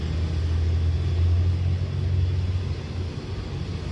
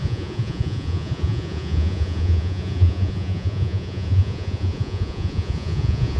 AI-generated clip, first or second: second